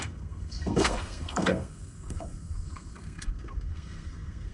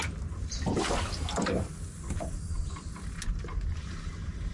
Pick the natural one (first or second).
second